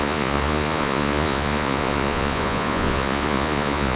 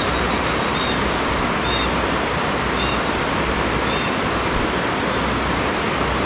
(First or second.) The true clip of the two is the second